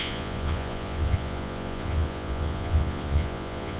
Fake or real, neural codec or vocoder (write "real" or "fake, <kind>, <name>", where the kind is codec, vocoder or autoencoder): fake, vocoder, Vocos